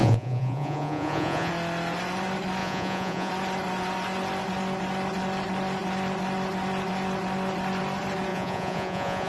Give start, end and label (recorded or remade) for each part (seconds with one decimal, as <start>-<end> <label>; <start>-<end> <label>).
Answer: 0.0-1.5 remade; 1.5-2.6 recorded; 2.6-3.3 remade; 3.3-8.3 recorded; 8.3-9.3 remade